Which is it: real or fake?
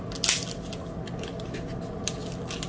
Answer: real